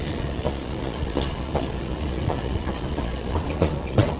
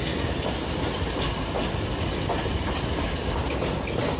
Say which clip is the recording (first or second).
second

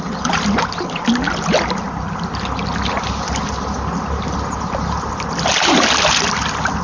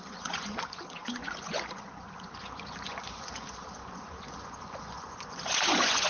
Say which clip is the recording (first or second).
first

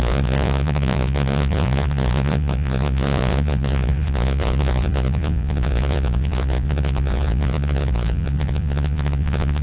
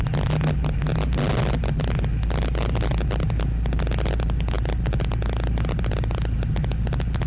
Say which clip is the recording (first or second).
second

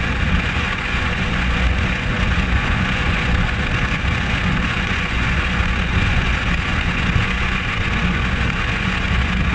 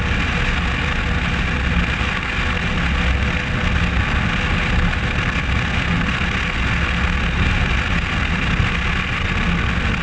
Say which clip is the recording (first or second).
second